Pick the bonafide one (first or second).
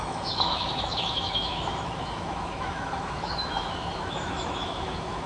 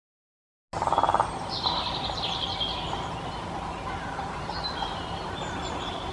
second